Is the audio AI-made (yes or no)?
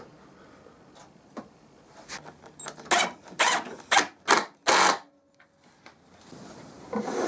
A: no